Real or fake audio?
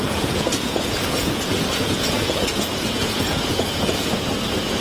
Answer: fake